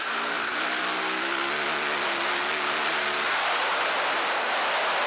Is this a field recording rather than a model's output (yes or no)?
yes